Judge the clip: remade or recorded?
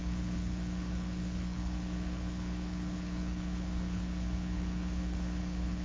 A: remade